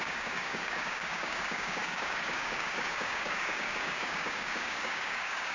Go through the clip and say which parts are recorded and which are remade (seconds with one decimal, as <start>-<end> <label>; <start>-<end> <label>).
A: 0.0-5.5 remade